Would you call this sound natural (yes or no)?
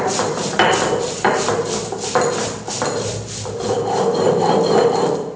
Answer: yes